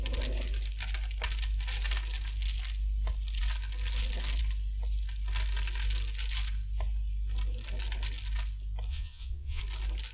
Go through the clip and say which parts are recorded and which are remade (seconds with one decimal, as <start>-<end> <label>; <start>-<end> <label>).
0.0-8.9 recorded; 8.9-9.6 remade; 9.6-10.1 recorded